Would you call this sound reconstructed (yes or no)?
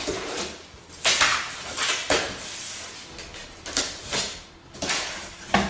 no